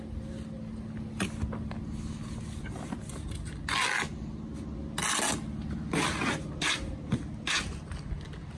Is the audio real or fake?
real